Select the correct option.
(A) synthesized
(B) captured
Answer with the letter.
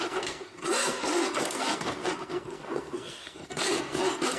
A